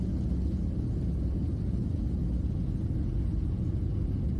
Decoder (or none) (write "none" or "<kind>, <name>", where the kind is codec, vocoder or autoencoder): none